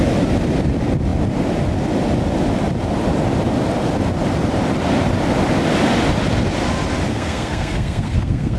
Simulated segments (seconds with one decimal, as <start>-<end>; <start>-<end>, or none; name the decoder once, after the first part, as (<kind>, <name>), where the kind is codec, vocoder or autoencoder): 7.1-8.6 (codec, SNAC)